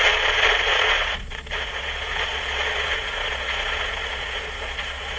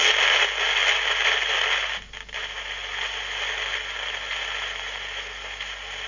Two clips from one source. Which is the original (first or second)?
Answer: second